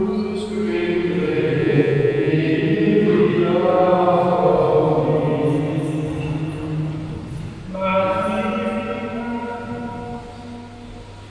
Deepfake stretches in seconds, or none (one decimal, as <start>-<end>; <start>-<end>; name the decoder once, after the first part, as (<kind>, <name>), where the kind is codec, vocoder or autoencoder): 1.6-2.3 (vocoder, Vocos)